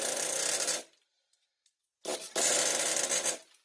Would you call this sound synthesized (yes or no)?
no